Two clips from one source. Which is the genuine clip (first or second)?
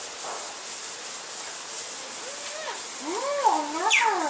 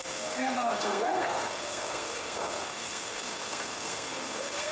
first